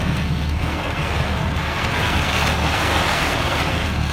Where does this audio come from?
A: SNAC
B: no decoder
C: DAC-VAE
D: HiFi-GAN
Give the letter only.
A